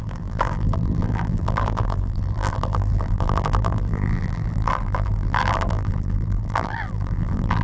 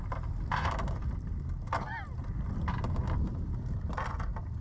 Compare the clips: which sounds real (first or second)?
second